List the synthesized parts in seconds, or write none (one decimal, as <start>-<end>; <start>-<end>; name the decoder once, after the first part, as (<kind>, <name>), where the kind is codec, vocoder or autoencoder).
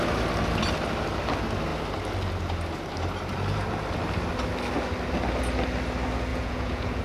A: 6.3-7.0 (vocoder, Vocos)